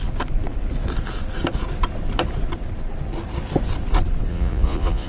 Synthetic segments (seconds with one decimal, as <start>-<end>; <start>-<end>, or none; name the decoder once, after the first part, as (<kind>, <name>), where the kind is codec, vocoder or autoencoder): 4.3-5.1 (vocoder, Vocos)